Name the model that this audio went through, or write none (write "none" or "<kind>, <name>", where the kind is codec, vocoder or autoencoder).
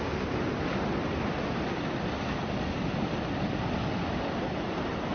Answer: none